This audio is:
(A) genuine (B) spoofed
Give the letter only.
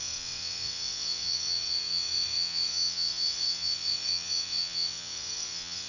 B